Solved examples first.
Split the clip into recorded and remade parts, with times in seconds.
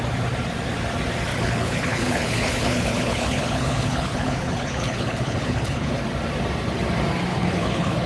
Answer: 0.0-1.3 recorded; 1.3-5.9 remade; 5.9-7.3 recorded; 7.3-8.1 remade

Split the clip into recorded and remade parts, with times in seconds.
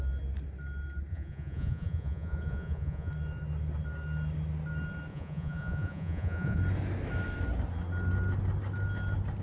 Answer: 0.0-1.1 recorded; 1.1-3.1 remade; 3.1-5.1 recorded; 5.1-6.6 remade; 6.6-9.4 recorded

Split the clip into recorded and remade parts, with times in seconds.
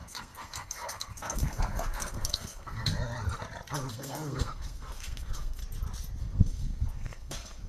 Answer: 0.0-2.9 remade; 2.9-3.9 recorded; 3.9-5.6 remade; 5.6-6.2 recorded; 6.2-7.7 remade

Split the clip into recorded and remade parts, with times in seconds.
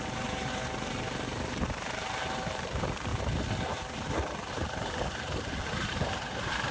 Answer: 0.0-3.1 remade; 3.1-4.5 recorded; 4.5-6.7 remade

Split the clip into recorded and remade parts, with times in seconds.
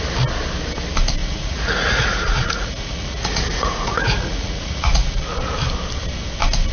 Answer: 0.0-1.2 recorded; 1.2-5.2 remade; 5.2-6.7 recorded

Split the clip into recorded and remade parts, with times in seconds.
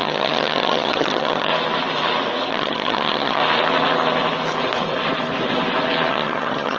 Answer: 0.0-1.5 remade; 1.5-2.5 recorded; 2.5-3.4 remade; 3.4-6.1 recorded; 6.1-6.8 remade